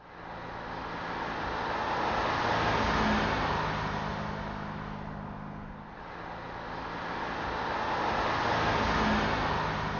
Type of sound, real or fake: real